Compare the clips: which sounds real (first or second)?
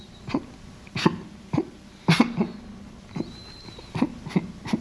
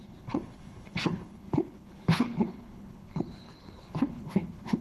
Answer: first